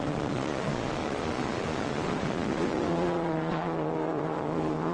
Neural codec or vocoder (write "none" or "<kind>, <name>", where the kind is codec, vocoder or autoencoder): vocoder, Vocos